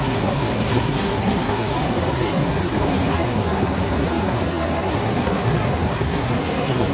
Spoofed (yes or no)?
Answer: yes